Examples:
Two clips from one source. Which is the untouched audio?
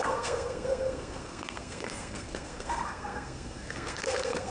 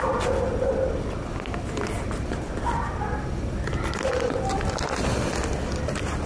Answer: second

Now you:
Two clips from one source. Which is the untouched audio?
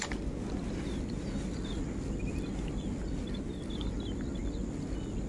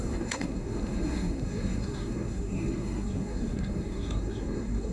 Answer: first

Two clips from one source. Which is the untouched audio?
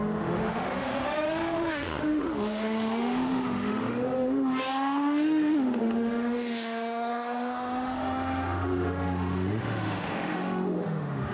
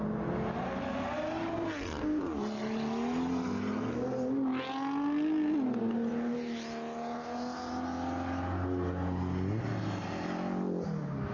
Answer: second